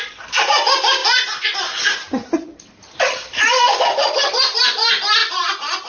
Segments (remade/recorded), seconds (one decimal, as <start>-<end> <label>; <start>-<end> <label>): 0.0-5.9 remade

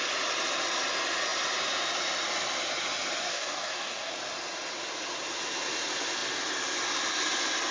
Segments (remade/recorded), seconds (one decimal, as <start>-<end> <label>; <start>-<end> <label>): 0.0-3.3 recorded; 3.3-4.1 remade; 4.1-7.7 recorded